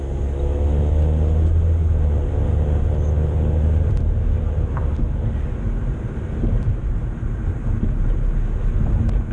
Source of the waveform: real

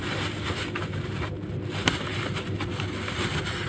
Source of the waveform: fake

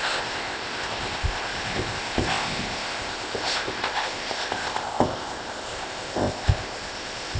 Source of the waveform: fake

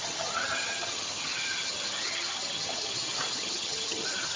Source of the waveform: fake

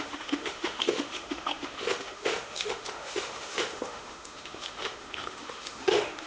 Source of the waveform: fake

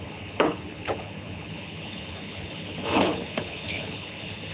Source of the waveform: fake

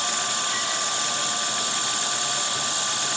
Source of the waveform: real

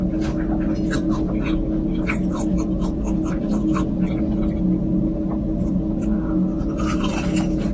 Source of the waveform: real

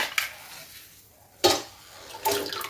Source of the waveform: real